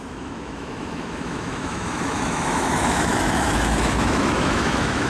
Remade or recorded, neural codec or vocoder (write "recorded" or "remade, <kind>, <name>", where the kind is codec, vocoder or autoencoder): remade, autoencoder, DAC-VAE